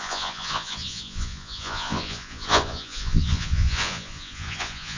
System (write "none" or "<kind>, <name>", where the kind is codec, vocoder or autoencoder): vocoder, Vocos